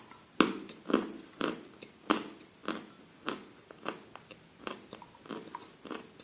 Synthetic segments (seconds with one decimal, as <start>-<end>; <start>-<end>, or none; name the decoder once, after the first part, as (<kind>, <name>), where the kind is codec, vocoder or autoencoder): none